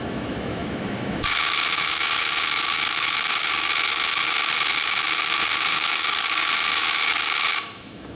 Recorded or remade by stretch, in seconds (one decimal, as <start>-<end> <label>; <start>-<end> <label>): 0.0-8.2 remade